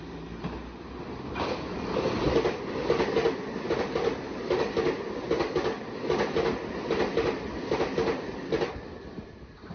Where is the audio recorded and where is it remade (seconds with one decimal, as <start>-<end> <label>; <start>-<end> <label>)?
0.0-0.6 remade; 0.6-3.8 recorded; 3.8-4.3 remade; 4.3-9.7 recorded